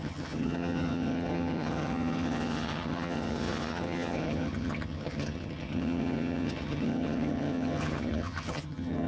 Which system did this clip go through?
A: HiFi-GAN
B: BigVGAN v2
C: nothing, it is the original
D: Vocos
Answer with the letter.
A